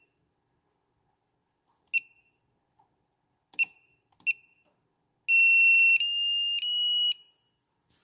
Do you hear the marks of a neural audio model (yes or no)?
no